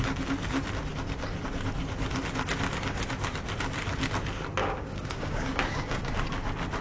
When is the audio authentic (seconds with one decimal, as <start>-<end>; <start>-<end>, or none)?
0.0-4.6; 6.1-6.8